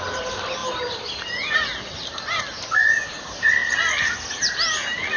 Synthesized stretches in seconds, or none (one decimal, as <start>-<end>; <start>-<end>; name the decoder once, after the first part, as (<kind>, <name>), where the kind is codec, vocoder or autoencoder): none